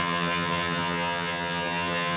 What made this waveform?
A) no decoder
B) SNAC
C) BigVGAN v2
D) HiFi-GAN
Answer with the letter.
D